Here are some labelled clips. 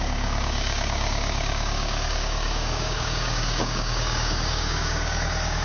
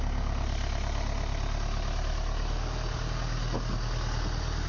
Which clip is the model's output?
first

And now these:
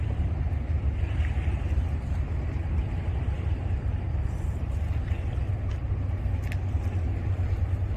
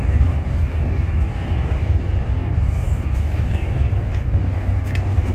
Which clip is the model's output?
second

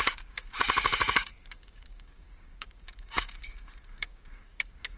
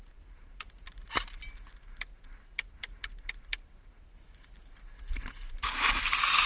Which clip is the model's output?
first